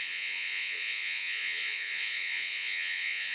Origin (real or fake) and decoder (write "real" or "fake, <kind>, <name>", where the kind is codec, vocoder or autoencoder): fake, vocoder, Vocos